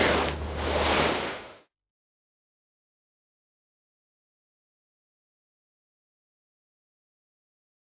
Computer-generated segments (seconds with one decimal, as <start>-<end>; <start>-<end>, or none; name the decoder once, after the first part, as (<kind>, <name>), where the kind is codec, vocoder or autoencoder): 1.3-1.9 (autoencoder, DAC-VAE)